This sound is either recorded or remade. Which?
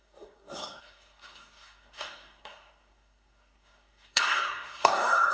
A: remade